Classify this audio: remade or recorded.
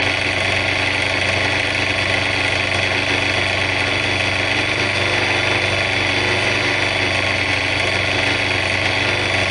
recorded